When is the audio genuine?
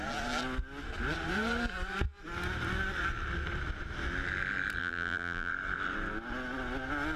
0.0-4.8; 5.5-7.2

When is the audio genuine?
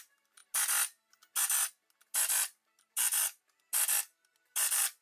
0.0-5.0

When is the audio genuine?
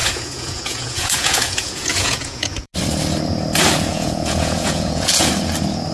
2.7-3.9; 5.3-5.9